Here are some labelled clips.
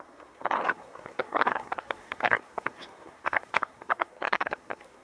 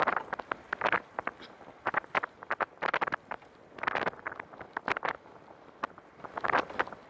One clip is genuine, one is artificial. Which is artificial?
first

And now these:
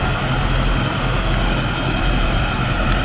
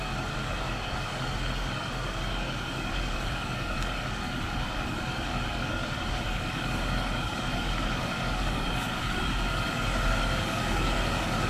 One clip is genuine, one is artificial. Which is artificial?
second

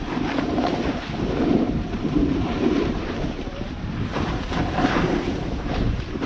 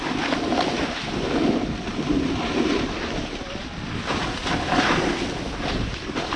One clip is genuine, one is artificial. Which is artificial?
first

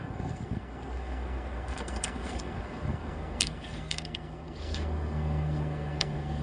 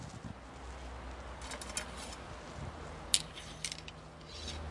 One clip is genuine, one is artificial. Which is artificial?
first